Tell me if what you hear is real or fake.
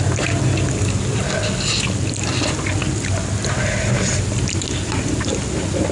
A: real